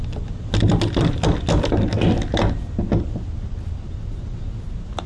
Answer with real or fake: real